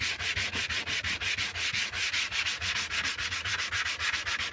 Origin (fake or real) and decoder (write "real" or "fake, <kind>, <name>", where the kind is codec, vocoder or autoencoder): fake, vocoder, Vocos